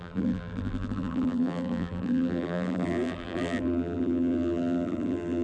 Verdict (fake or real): fake